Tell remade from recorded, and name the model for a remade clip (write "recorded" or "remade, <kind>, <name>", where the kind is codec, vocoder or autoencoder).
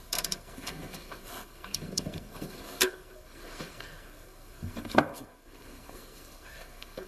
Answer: remade, codec, SNAC